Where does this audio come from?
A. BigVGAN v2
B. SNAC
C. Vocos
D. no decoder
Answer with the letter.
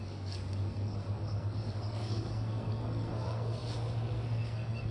B